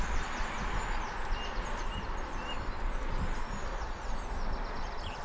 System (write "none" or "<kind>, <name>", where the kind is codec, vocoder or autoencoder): none